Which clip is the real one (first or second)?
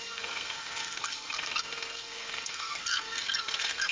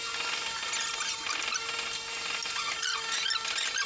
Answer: second